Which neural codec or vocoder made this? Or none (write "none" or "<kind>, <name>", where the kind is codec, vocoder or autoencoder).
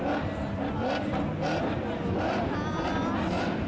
none